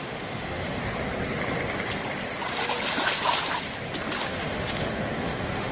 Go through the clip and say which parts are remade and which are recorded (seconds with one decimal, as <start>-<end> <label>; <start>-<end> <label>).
0.0-0.8 remade; 0.8-4.2 recorded; 4.2-5.7 remade